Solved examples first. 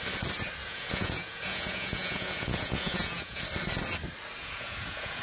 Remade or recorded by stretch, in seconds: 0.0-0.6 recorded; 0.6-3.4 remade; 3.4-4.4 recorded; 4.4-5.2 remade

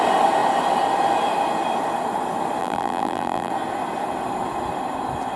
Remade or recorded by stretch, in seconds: 0.0-2.6 recorded; 2.6-3.5 remade; 3.5-5.4 recorded